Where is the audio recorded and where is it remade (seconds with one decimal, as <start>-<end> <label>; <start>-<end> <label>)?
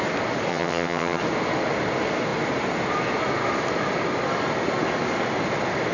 0.0-0.5 recorded; 0.5-1.2 remade; 1.2-5.9 recorded